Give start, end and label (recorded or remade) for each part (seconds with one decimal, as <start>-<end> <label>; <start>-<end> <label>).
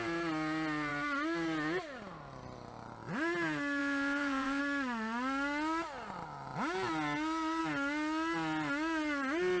0.0-3.8 recorded; 3.8-4.6 remade; 4.6-9.6 recorded